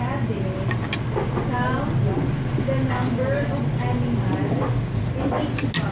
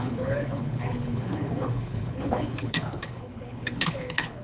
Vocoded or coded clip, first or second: second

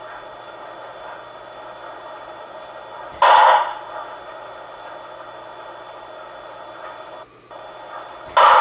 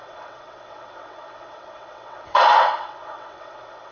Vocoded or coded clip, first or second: second